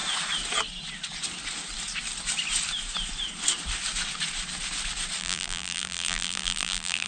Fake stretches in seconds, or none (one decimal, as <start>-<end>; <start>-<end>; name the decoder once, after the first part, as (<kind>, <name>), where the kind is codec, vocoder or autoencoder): 5.2-7.1 (vocoder, BigVGAN v2)